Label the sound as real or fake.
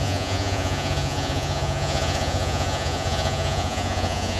fake